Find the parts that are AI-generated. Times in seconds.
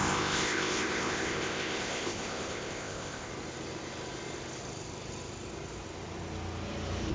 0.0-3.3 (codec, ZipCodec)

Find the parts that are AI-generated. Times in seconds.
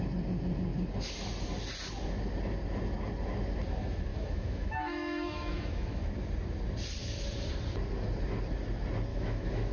4.1-6.1 (autoencoder, DAC-VAE); 9.1-9.7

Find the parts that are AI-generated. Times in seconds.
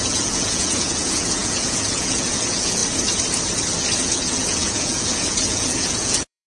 0.0-2.8 (vocoder, Vocos); 4.0-6.5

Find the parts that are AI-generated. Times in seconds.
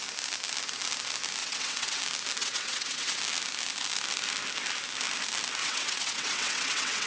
1.4-2.0 (vocoder, WaveNeXt); 2.4-3.2; 5.6-7.1